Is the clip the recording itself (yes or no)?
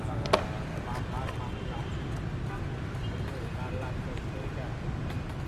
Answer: yes